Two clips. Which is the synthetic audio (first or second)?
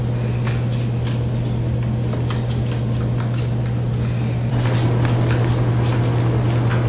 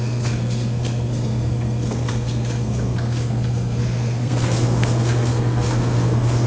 second